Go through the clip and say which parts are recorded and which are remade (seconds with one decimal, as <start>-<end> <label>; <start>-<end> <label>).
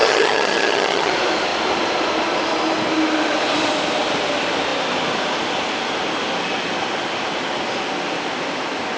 0.0-1.1 remade; 1.1-9.0 recorded